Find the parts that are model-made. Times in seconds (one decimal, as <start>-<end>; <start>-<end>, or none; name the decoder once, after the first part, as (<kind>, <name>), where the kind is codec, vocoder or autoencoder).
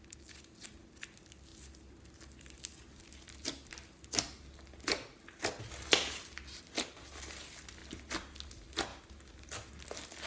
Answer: none